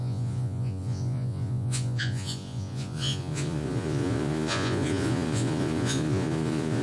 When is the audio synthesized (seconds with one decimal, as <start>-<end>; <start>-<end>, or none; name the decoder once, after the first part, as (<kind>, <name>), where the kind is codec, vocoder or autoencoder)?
0.0-6.8 (vocoder, Vocos)